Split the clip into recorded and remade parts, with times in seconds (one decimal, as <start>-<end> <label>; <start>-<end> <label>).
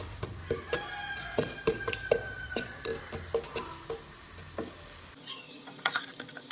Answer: 0.0-0.4 remade; 0.4-1.1 recorded; 1.1-2.9 remade; 2.9-5.2 recorded; 5.2-6.5 remade